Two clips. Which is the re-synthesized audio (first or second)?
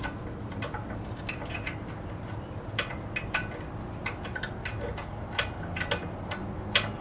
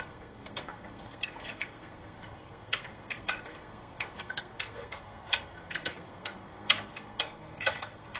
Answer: second